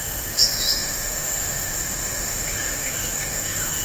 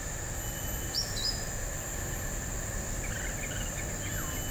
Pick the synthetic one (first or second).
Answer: first